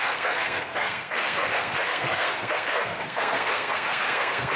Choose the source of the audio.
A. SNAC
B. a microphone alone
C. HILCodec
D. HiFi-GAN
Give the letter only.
A